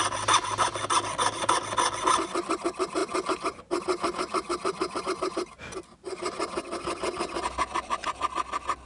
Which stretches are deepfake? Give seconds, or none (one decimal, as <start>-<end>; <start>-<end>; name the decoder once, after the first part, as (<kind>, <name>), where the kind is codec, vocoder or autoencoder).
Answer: none

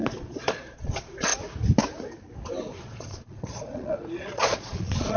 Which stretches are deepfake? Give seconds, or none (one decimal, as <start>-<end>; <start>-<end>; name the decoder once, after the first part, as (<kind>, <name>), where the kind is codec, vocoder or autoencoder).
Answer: 0.0-1.3 (vocoder, Vocos); 2.8-5.2

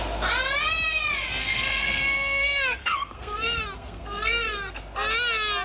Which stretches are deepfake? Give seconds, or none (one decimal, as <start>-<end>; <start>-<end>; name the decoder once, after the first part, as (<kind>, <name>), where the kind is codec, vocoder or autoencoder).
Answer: 1.4-4.8 (codec, SNAC)

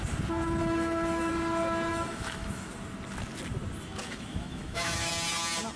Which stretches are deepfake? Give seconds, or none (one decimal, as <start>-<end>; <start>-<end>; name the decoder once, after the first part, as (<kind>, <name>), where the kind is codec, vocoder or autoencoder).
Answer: 0.6-1.3 (autoencoder, DAC-VAE); 1.9-2.7; 4.0-5.1

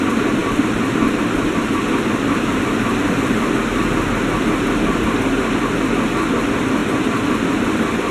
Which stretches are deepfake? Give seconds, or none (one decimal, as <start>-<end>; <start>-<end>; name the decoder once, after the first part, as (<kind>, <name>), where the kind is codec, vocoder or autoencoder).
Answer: none

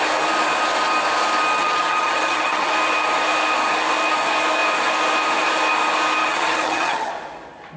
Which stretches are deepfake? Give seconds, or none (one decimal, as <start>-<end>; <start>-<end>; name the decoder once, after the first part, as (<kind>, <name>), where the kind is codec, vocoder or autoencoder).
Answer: 1.6-2.7 (vocoder, HiFi-GAN); 6.2-7.1